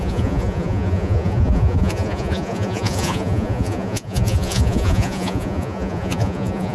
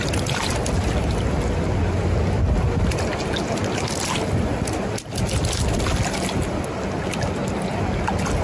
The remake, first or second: first